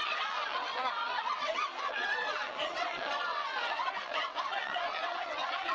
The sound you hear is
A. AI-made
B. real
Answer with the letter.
A